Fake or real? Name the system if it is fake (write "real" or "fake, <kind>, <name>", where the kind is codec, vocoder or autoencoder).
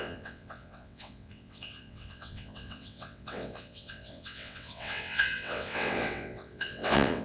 fake, vocoder, WaveNeXt